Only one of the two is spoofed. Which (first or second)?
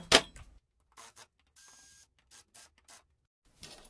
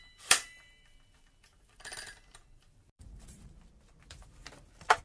second